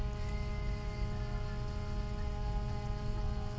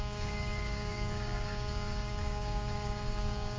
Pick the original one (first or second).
first